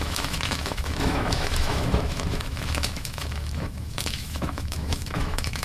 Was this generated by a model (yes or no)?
yes